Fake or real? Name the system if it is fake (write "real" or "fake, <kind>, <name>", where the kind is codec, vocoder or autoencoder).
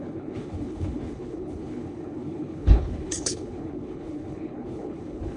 fake, codec, HILCodec